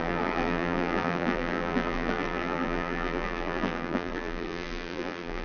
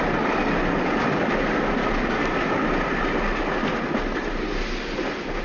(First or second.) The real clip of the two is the second